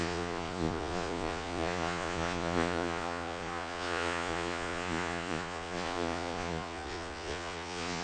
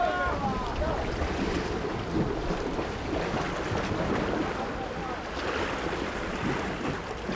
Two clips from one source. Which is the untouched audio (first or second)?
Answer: second